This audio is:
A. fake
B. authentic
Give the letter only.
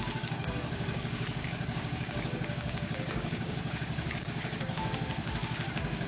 A